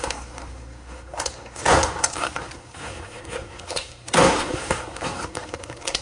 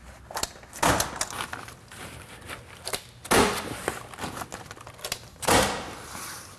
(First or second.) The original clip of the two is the second